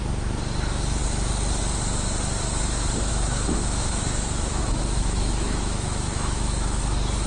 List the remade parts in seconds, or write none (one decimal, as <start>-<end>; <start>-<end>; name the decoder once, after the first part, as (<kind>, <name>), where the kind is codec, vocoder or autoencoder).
3.1-6.8 (autoencoder, DAC-VAE)